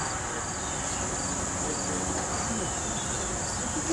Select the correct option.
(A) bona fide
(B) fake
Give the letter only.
A